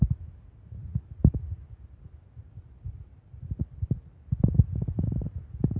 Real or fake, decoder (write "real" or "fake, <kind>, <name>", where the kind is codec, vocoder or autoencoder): real